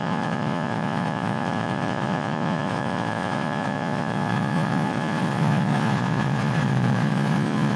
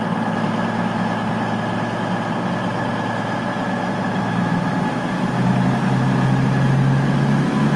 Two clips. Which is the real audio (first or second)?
second